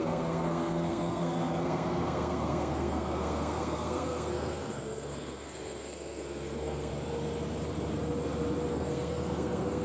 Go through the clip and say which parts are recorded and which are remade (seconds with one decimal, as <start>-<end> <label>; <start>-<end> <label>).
0.0-6.9 remade; 6.9-8.7 recorded; 8.7-9.8 remade